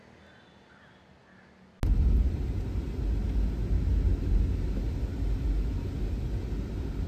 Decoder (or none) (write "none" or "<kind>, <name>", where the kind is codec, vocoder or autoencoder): none